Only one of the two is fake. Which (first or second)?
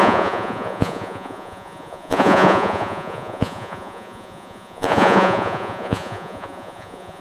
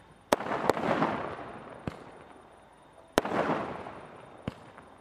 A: first